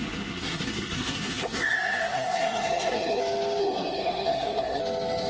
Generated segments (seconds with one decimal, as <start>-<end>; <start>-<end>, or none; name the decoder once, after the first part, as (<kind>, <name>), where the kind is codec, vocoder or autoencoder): 0.0-3.2 (codec, SNAC); 3.6-4.8